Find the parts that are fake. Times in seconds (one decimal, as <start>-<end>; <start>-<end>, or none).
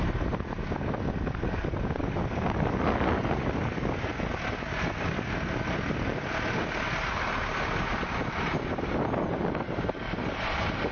none